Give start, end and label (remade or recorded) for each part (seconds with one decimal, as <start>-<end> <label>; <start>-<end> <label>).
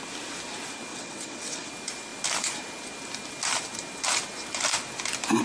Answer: 0.0-0.9 recorded; 0.9-1.7 remade; 1.7-5.4 recorded